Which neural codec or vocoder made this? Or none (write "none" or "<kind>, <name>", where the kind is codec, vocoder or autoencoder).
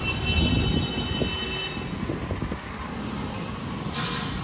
none